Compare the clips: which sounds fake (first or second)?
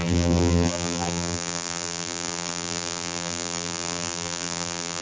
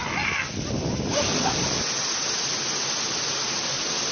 first